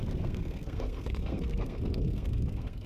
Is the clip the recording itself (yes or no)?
no